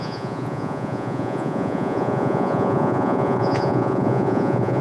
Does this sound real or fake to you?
fake